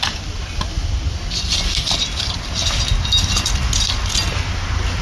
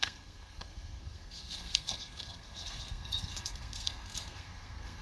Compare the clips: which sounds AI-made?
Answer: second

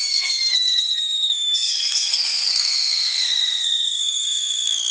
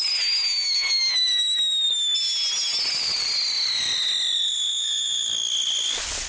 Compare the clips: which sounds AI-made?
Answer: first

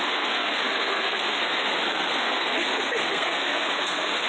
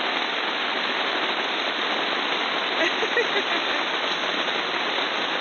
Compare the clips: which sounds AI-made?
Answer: first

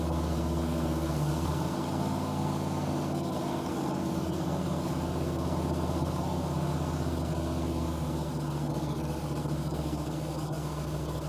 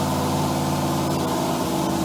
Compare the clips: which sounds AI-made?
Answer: first